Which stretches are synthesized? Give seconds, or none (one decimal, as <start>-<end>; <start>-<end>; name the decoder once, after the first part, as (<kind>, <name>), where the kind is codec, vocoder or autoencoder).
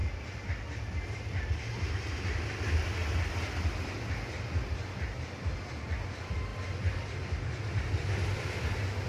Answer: none